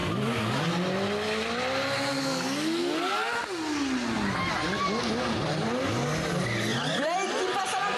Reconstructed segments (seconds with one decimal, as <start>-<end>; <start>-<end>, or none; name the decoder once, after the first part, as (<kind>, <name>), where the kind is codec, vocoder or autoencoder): none